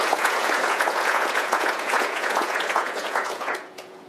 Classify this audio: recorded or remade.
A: remade